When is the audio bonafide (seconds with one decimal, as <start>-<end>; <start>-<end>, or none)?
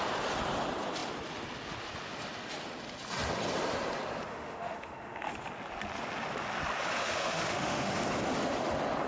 0.0-4.3; 5.3-7.0; 7.9-9.1